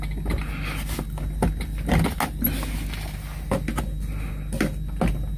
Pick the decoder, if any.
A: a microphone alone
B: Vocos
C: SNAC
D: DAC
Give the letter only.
A